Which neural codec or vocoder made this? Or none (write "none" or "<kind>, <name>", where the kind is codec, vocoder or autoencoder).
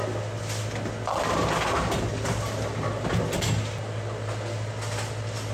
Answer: none